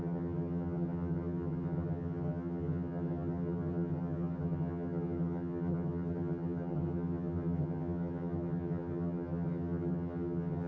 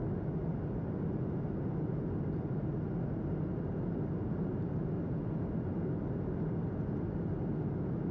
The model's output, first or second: first